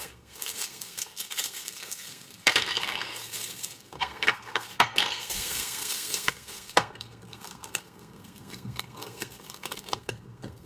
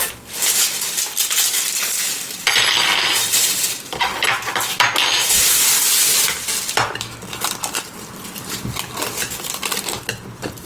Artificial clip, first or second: first